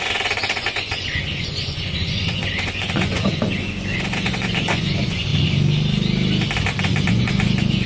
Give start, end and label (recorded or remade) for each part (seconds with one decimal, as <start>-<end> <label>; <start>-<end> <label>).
0.0-5.3 remade; 5.3-6.8 recorded; 6.8-7.9 remade